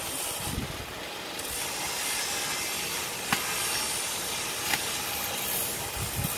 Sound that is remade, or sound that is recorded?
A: recorded